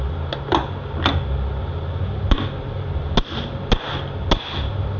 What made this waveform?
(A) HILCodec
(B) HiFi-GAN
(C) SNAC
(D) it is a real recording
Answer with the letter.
D